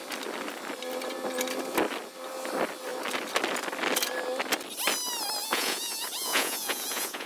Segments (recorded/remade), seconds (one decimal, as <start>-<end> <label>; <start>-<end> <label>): 0.0-5.4 recorded; 5.4-7.3 remade